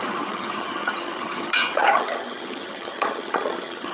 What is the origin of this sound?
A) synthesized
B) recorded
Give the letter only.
A